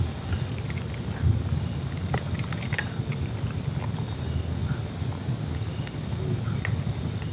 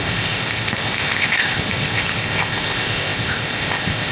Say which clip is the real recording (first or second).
first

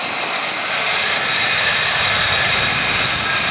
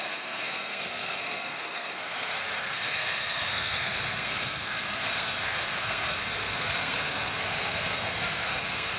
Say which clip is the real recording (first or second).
first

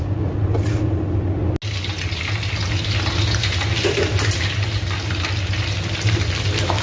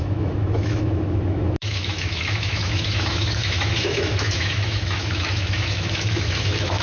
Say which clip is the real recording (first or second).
first